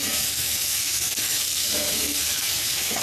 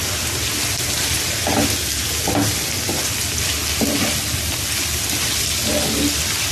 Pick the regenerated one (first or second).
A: first